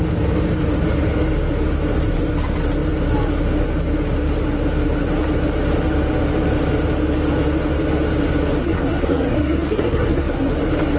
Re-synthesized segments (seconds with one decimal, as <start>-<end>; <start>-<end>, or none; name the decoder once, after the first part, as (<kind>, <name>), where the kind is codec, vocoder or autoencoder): 8.6-10.5 (codec, SNAC)